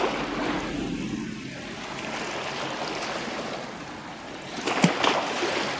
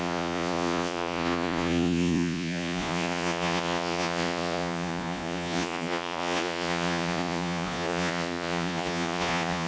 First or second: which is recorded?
first